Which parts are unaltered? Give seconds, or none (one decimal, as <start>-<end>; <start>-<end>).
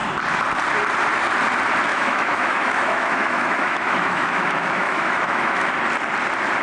0.0-1.9; 5.7-6.6